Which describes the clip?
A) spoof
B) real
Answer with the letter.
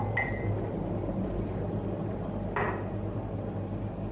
B